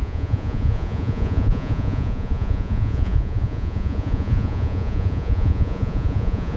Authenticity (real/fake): fake